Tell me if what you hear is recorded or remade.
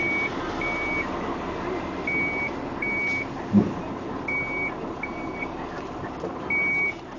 recorded